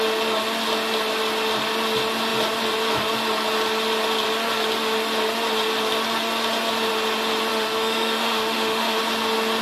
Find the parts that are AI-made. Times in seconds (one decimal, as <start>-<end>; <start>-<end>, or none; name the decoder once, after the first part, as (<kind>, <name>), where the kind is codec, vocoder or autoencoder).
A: 7.5-9.0 (autoencoder, DAC-VAE)